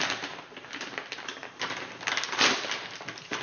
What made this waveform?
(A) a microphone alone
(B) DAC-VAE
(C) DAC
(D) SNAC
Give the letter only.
A